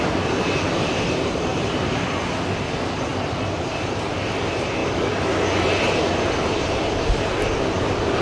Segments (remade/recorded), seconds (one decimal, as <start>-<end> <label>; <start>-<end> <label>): 0.0-8.2 recorded